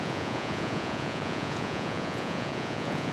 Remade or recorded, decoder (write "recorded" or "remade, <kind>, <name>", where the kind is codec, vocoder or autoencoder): remade, vocoder, Vocos